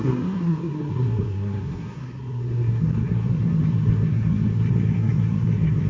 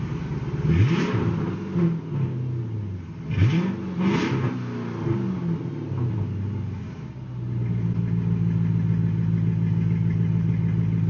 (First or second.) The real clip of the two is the second